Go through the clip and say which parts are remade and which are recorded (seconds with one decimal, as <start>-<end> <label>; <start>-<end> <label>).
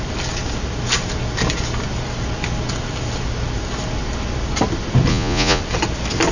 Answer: 0.0-5.1 recorded; 5.1-5.6 remade; 5.6-6.3 recorded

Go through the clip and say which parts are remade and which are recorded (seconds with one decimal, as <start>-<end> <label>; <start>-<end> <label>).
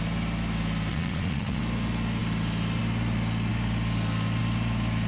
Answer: 0.0-0.9 recorded; 0.9-1.6 remade; 1.6-5.1 recorded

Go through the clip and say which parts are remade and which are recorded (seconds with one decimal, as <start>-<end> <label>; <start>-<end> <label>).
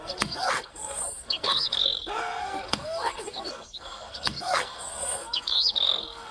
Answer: 0.0-6.3 remade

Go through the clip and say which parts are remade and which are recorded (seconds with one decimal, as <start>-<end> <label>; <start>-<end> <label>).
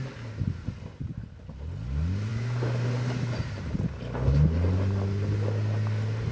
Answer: 0.0-6.3 recorded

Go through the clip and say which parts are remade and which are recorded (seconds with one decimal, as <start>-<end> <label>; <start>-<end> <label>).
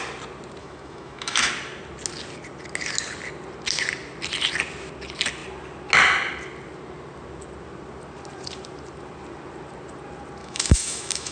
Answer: 0.0-0.6 recorded; 0.6-1.5 remade; 1.5-10.4 recorded; 10.4-11.3 remade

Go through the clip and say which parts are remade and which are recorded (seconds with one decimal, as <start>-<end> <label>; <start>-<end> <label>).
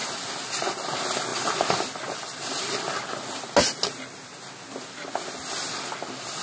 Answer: 0.0-6.4 recorded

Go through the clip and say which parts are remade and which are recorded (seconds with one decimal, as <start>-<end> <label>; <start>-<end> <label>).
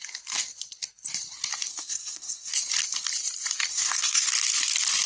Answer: 0.0-1.7 recorded; 1.7-2.5 remade; 2.5-3.7 recorded; 3.7-4.3 remade; 4.3-5.1 recorded